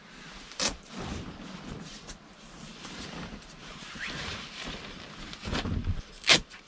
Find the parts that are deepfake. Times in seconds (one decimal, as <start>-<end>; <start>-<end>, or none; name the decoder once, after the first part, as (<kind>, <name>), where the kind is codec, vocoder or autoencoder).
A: 2.7-6.7 (vocoder, BigVGAN v2)